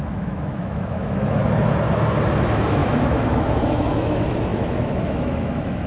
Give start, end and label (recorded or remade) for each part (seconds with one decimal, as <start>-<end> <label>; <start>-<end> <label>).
0.0-1.4 remade; 1.4-2.4 recorded; 2.4-5.9 remade